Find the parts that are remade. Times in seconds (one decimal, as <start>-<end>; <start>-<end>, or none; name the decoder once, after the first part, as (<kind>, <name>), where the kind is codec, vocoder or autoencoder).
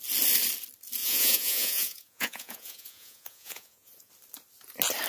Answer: 1.0-4.1 (vocoder, Vocos)